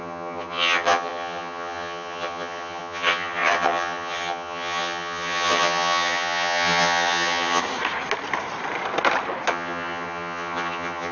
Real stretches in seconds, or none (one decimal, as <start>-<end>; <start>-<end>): 7.6-9.5